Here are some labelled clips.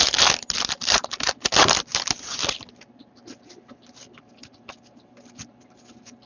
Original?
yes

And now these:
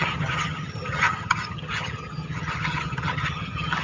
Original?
no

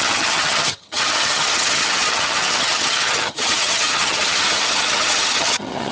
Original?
no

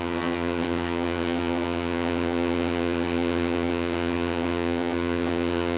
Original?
no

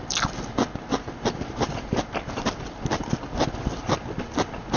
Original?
yes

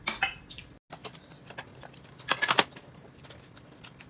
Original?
yes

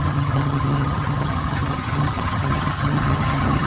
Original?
no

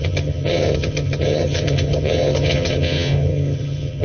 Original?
no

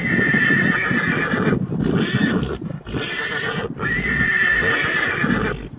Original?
yes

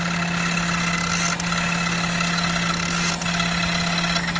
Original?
yes